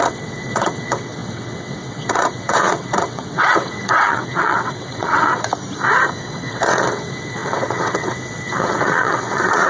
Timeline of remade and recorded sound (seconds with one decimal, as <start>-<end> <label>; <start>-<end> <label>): 0.0-5.5 remade; 5.5-6.2 recorded; 6.2-9.7 remade

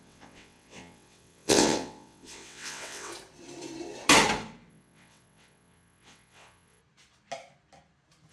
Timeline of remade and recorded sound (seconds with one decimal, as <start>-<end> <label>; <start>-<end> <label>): 0.0-3.1 remade; 3.1-4.7 recorded; 4.7-6.8 remade; 6.8-8.3 recorded

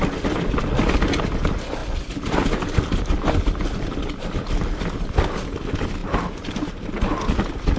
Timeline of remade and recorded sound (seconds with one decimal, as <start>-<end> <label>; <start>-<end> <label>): 0.0-7.8 recorded

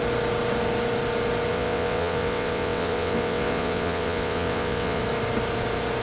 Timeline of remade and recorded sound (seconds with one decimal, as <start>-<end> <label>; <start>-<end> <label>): 0.0-1.5 recorded; 1.5-5.0 remade; 5.0-6.0 recorded